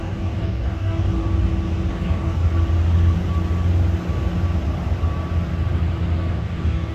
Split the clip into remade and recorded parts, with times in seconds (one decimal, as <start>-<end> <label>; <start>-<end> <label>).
0.0-1.2 remade; 1.2-1.9 recorded; 1.9-2.4 remade; 2.4-6.3 recorded; 6.3-6.9 remade